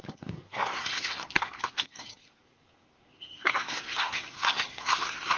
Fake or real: fake